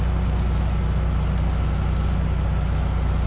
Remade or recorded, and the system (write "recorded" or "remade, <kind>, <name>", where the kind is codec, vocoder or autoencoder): recorded